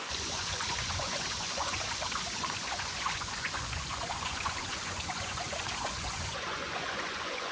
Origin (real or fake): fake